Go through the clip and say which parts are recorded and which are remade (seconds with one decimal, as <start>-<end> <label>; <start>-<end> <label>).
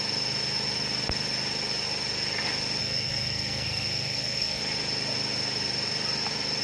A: 0.0-2.8 recorded; 2.8-4.6 remade; 4.6-6.6 recorded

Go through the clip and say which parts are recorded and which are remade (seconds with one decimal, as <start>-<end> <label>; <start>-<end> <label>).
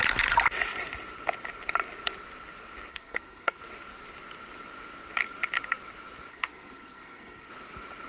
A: 0.0-2.9 recorded; 2.9-3.6 remade; 3.6-6.3 recorded; 6.3-7.5 remade; 7.5-8.1 recorded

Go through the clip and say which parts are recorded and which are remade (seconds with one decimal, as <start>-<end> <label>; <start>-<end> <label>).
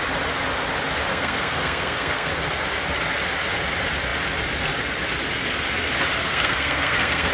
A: 0.0-1.1 recorded; 1.1-2.3 remade; 2.3-6.2 recorded; 6.2-7.3 remade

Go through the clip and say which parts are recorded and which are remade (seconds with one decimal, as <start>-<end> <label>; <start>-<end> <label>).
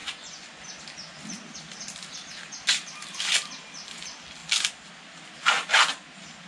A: 0.0-0.8 remade; 0.8-6.5 recorded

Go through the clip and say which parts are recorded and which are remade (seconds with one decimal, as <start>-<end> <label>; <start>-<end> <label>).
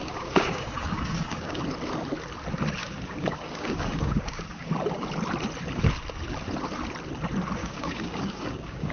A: 0.0-1.6 remade; 1.6-2.8 recorded; 2.8-4.7 remade; 4.7-7.6 recorded; 7.6-8.9 remade